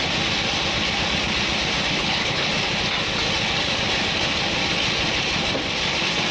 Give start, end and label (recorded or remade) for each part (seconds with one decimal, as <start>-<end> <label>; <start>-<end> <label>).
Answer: 0.0-2.0 recorded; 2.0-2.5 remade; 2.5-6.3 recorded